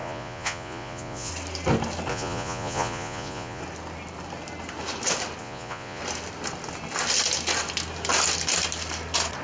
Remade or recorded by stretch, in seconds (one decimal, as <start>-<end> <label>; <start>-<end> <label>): 0.0-1.3 remade; 1.3-2.1 recorded; 2.1-3.6 remade; 3.6-5.4 recorded; 5.4-6.0 remade; 6.0-9.4 recorded